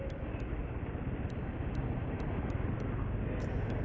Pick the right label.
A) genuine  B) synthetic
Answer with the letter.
A